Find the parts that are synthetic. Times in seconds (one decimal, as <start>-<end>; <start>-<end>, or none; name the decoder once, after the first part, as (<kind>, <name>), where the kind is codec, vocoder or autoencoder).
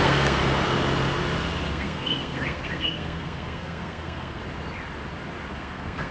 0.0-0.4 (codec, SNAC); 1.7-4.4; 5.5-6.1